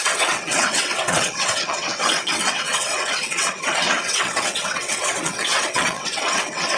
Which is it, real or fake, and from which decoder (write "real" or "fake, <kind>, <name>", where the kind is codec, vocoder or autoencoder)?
fake, vocoder, WaveNeXt